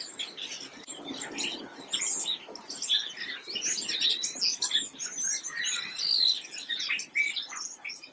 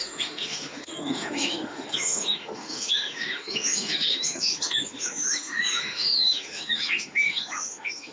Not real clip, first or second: second